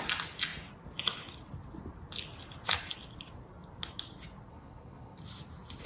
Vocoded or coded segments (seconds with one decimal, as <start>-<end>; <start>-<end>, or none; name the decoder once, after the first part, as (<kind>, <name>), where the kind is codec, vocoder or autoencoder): 4.5-5.2 (codec, HILCodec)